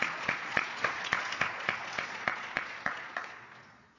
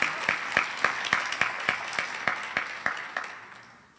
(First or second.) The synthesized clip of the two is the first